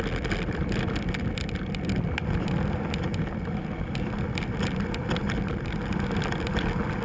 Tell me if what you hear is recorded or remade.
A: recorded